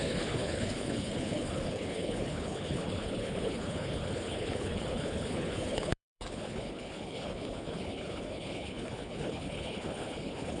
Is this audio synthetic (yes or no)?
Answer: yes